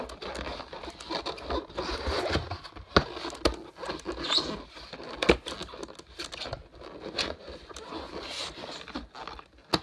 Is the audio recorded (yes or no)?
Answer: yes